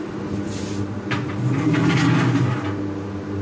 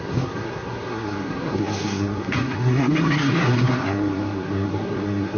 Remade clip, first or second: second